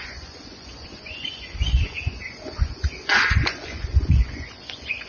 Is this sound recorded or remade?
remade